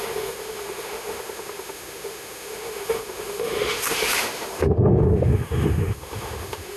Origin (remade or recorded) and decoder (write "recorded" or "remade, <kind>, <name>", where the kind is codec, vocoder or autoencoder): remade, autoencoder, DAC-VAE